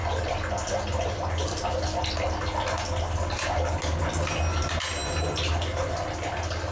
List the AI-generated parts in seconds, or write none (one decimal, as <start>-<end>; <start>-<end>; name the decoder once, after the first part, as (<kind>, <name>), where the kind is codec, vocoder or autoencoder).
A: none